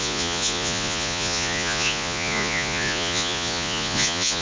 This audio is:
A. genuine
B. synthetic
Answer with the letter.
B